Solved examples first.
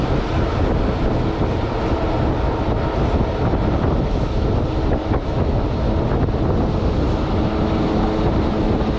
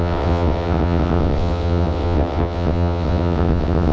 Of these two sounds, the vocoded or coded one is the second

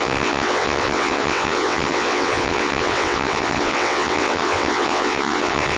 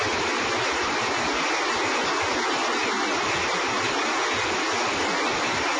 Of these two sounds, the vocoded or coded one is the first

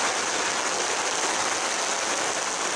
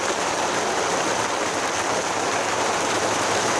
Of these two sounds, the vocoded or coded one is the second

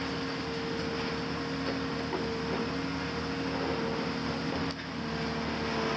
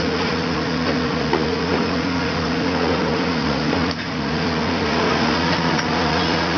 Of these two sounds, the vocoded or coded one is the second